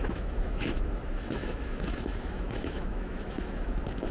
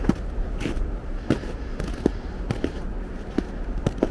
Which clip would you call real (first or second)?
second